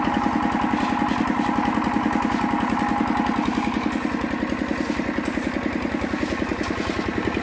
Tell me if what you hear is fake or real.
real